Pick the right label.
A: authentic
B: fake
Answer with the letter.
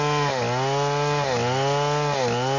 A